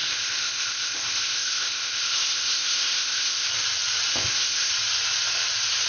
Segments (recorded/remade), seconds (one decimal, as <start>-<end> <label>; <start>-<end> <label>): 0.0-3.5 remade; 3.5-4.1 recorded; 4.1-4.7 remade; 4.7-5.9 recorded

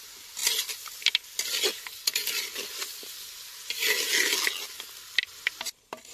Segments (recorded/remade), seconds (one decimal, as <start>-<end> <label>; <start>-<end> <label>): 0.0-6.1 recorded